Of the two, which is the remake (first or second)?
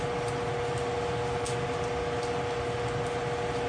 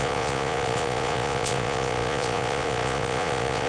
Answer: second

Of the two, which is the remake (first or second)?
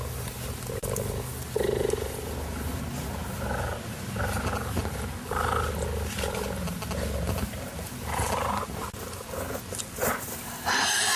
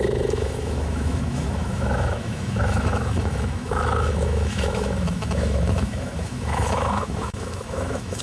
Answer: second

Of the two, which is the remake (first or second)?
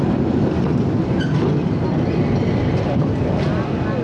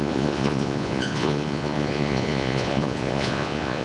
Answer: second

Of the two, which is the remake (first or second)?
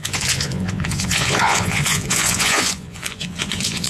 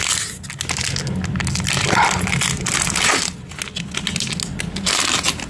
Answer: first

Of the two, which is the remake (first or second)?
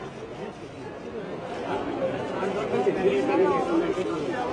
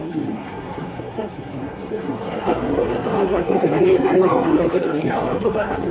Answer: second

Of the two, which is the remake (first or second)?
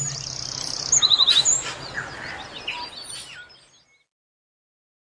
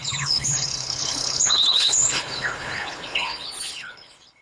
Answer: second